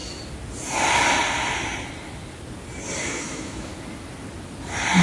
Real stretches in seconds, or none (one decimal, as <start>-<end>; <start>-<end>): 0.0-3.0; 3.7-5.0